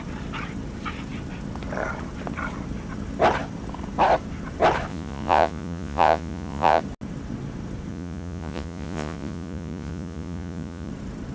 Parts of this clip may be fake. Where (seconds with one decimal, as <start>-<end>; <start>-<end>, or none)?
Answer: 4.9-6.8; 7.9-10.9